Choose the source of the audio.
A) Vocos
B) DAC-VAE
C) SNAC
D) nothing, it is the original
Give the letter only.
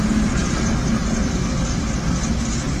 D